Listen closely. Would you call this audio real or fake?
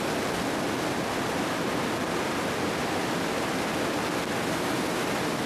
real